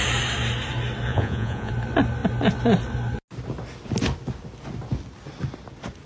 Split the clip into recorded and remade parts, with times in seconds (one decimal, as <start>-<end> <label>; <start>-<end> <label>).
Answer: 0.0-1.1 recorded; 1.1-1.7 remade; 1.7-6.1 recorded